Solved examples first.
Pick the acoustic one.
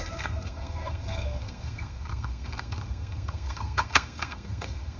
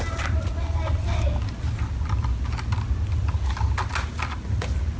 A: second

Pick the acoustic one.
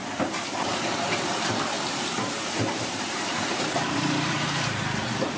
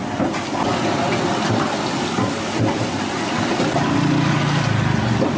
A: second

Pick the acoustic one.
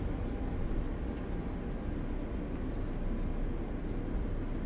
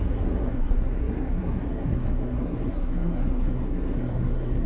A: first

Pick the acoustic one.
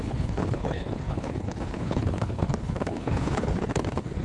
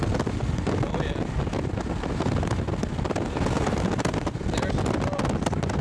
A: second